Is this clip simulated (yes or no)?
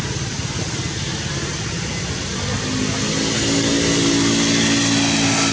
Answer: no